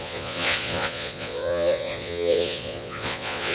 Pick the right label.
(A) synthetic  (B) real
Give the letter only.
A